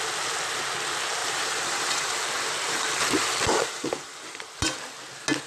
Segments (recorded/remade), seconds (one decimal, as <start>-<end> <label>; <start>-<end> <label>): 0.0-1.2 recorded; 1.2-4.4 remade; 4.4-5.5 recorded